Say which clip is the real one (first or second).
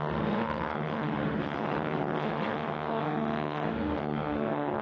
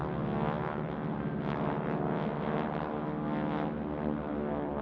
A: second